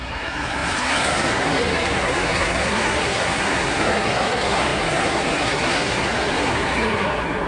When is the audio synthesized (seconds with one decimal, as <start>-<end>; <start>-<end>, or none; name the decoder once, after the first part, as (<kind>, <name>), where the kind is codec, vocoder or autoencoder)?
0.0-7.5 (codec, SNAC)